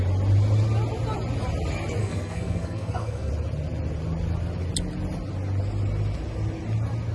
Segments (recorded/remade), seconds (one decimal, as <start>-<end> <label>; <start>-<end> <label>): 0.0-2.0 recorded; 2.0-3.3 remade; 3.3-7.1 recorded

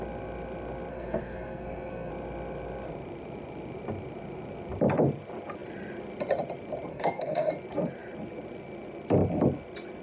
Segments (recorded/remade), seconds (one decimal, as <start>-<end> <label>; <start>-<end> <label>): 0.0-0.9 recorded; 0.9-2.1 remade; 2.1-6.9 recorded; 6.9-7.5 remade; 7.5-10.0 recorded

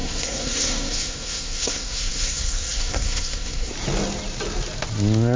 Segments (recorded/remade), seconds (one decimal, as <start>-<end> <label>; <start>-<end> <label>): 0.0-3.7 remade; 3.7-5.4 recorded

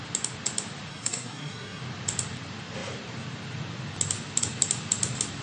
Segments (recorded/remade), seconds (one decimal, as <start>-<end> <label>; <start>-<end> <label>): 0.0-0.9 recorded; 0.9-1.8 remade; 1.8-5.4 recorded

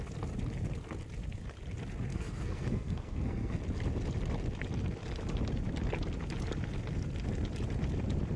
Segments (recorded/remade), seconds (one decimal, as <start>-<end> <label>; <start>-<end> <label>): 0.0-2.1 recorded; 2.1-3.6 remade; 3.6-8.4 recorded